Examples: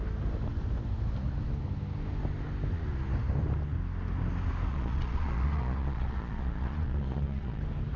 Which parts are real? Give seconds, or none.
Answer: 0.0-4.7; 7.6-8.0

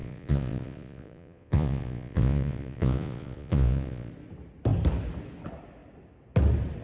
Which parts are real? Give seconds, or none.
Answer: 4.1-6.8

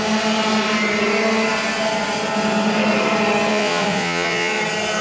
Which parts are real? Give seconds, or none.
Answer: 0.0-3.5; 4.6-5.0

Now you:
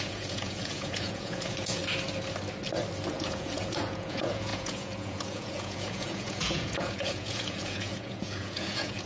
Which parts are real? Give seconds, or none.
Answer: 1.8-3.1